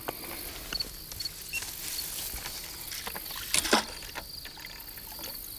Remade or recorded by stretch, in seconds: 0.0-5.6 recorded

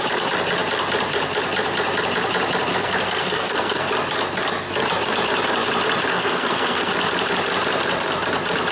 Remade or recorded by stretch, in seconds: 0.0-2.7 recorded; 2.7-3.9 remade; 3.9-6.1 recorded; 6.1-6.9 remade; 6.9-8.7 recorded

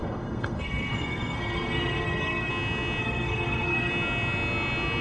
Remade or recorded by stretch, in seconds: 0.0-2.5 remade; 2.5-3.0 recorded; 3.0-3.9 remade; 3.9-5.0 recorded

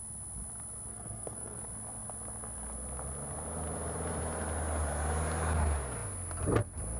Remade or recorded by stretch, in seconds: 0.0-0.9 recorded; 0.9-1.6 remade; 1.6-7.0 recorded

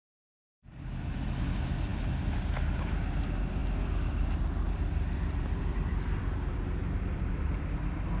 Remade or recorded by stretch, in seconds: 0.0-8.2 recorded